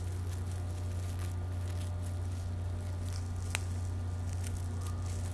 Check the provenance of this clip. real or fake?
real